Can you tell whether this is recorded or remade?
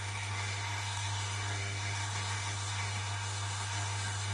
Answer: remade